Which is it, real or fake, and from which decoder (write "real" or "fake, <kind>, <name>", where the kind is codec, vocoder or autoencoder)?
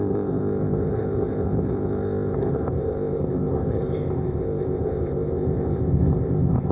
fake, codec, ZipCodec